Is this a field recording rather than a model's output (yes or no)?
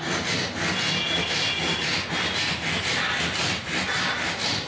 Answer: yes